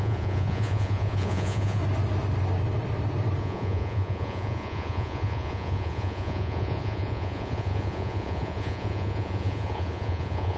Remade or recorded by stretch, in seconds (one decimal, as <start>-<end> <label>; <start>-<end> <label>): 0.0-1.8 remade; 1.8-3.4 recorded; 3.4-10.6 remade

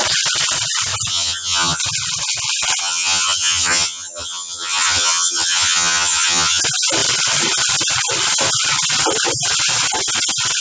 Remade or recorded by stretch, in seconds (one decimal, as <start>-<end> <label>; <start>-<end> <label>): 0.0-1.1 recorded; 1.1-1.8 remade; 1.8-2.8 recorded; 2.8-6.6 remade; 6.6-10.6 recorded

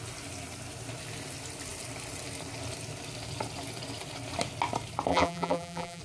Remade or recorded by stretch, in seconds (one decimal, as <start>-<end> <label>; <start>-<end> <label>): 0.0-5.1 recorded; 5.1-6.0 remade